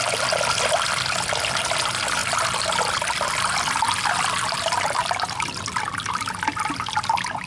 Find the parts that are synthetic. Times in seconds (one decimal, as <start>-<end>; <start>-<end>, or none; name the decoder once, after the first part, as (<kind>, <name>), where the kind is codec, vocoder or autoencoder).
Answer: none